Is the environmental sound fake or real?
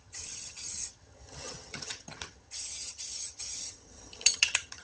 fake